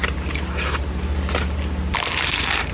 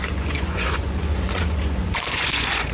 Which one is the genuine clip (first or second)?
first